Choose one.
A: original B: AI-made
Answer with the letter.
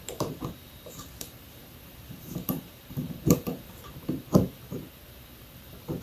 B